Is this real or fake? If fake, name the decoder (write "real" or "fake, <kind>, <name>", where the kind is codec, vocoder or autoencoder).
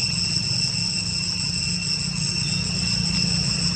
real